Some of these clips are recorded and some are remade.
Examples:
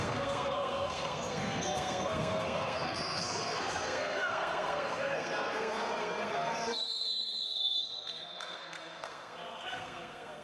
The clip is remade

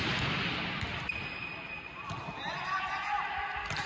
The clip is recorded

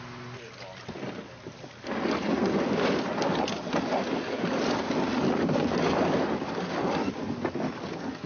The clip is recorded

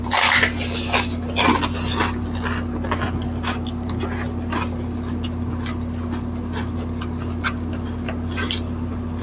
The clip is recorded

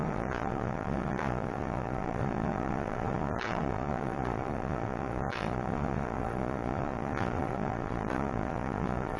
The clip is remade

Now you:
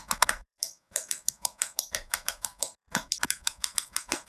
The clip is remade